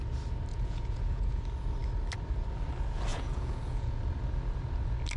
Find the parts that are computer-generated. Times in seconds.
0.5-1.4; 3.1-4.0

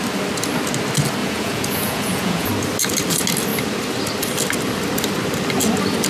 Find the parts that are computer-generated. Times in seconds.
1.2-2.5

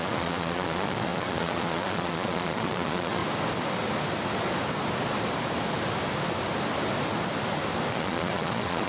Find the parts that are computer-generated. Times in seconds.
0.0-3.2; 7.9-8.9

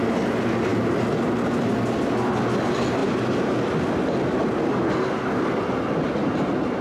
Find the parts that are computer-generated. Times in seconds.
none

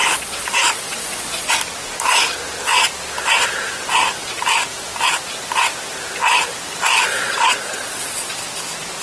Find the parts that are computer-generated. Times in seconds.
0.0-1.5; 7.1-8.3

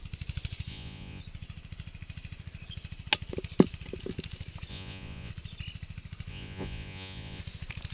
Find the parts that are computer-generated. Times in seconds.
0.7-1.2; 4.7-5.3; 6.3-7.4

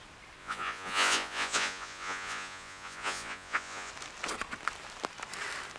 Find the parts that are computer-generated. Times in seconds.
0.4-3.9